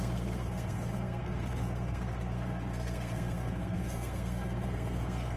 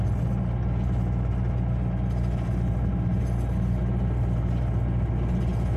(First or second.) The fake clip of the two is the first